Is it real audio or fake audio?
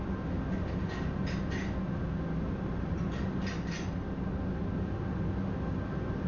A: real